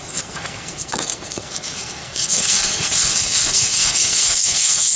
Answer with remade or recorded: remade